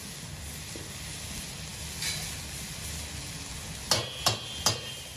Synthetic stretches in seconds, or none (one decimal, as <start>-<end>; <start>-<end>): none